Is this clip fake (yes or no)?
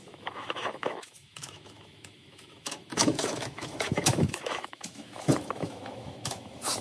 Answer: yes